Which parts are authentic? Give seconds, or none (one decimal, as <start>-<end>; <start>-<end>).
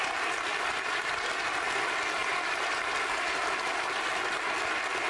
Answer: 0.0-5.1